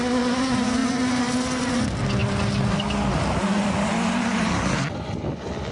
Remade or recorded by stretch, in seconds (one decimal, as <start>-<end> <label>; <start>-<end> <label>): 0.0-5.7 recorded